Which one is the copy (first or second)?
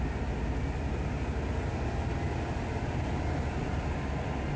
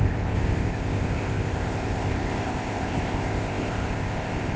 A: second